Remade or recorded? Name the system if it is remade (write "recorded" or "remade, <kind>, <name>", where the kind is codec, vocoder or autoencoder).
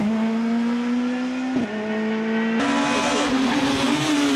recorded